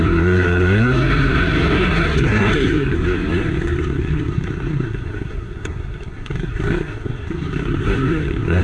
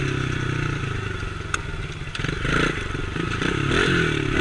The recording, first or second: second